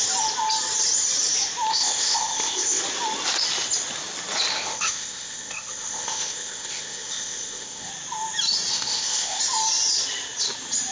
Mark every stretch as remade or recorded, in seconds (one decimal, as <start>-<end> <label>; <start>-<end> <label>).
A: 0.0-1.7 recorded; 1.7-2.8 remade; 2.8-4.5 recorded; 4.5-7.9 remade; 7.9-8.7 recorded; 8.7-9.4 remade; 9.4-10.9 recorded